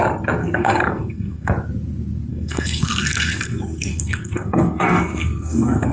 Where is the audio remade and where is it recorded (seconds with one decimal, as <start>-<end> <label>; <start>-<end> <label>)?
0.0-0.4 recorded; 0.4-1.5 remade; 1.5-2.3 recorded; 2.3-5.9 remade

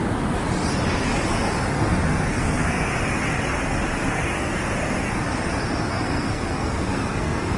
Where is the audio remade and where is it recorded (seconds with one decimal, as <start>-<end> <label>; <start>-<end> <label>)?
0.0-2.3 recorded; 2.3-2.9 remade; 2.9-4.1 recorded; 4.1-4.6 remade; 4.6-5.9 recorded; 5.9-7.6 remade

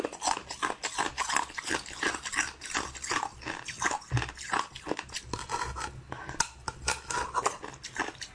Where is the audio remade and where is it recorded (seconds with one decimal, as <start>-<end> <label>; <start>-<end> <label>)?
0.0-8.3 recorded

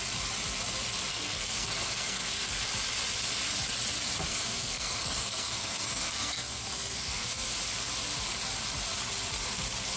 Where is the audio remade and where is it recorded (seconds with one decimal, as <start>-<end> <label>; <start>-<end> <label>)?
0.0-1.1 recorded; 1.1-2.6 remade; 2.6-4.3 recorded; 4.3-7.6 remade; 7.6-10.0 recorded